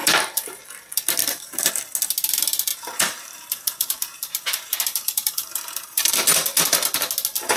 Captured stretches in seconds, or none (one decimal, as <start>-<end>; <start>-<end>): 0.6-1.2; 1.7-2.7; 6.1-7.6